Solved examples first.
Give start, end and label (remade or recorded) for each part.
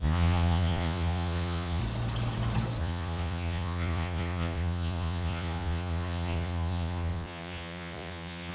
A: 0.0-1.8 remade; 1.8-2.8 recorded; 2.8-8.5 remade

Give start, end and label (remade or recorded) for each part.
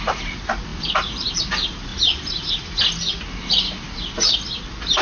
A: 0.0-5.0 recorded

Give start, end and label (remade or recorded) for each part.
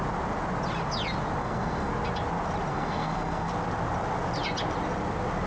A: 0.0-1.4 recorded; 1.4-1.9 remade; 1.9-2.7 recorded; 2.7-3.5 remade; 3.5-5.5 recorded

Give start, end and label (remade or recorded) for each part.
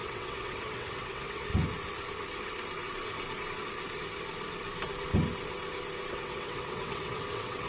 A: 0.0-1.5 remade; 1.5-6.1 recorded; 6.1-7.7 remade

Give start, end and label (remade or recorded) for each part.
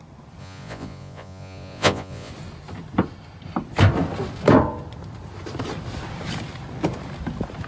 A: 0.0-0.4 recorded; 0.4-2.3 remade; 2.3-7.7 recorded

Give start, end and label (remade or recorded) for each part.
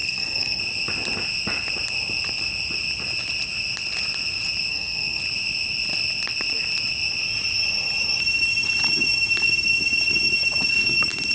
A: 0.0-0.6 remade; 0.6-4.7 recorded; 4.7-5.2 remade; 5.2-11.3 recorded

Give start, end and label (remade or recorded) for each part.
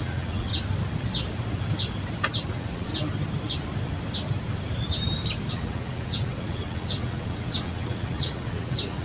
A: 0.0-0.5 remade; 0.5-2.5 recorded; 2.5-2.9 remade; 2.9-5.5 recorded; 5.5-9.0 remade